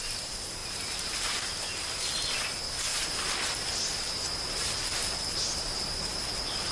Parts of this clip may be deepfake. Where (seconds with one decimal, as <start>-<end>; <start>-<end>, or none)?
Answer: none